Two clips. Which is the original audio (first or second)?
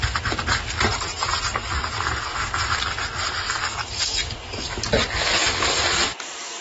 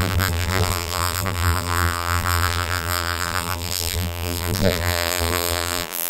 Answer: first